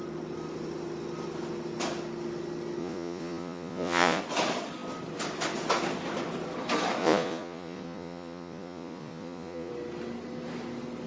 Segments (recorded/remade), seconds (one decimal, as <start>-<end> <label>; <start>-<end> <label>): 0.0-2.8 recorded; 2.8-4.2 remade; 4.2-7.0 recorded; 7.0-9.7 remade; 9.7-11.1 recorded